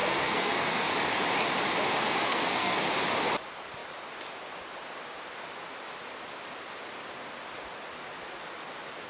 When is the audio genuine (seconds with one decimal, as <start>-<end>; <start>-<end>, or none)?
0.9-2.2; 2.8-9.1